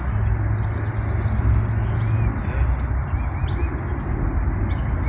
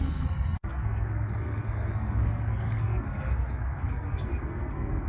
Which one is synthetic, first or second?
second